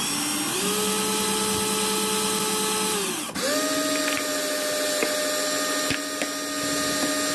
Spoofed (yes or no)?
no